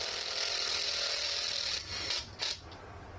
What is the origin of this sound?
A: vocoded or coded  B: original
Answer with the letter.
B